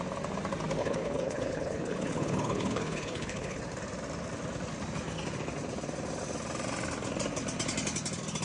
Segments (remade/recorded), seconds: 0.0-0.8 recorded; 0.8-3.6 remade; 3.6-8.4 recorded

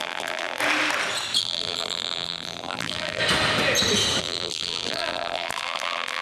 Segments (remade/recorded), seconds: 0.0-0.6 remade; 0.6-1.4 recorded; 1.4-3.2 remade; 3.2-4.2 recorded; 4.2-6.2 remade

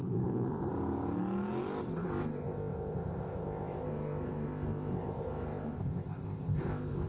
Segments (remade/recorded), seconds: 0.0-0.7 remade; 0.7-1.9 recorded; 1.9-7.1 remade

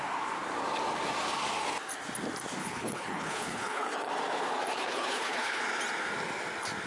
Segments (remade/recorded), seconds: 0.0-2.6 recorded; 2.6-4.1 remade; 4.1-4.7 recorded; 4.7-5.6 remade; 5.6-6.9 recorded

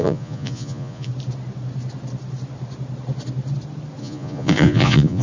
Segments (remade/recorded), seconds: 0.0-1.1 remade; 1.1-4.0 recorded; 4.0-5.2 remade